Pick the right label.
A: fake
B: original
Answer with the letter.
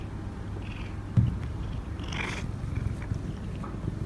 B